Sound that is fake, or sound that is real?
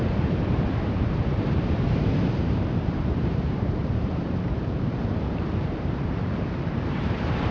fake